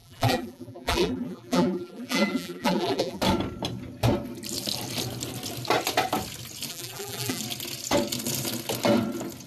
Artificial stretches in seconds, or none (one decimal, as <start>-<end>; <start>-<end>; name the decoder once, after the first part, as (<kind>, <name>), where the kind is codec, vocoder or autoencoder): 0.0-3.2 (vocoder, BigVGAN v2); 6.7-7.4